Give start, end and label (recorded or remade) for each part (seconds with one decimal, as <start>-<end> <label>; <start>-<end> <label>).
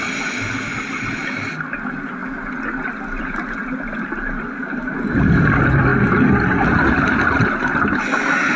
0.0-8.6 recorded